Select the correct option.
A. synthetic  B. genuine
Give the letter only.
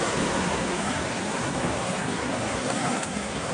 A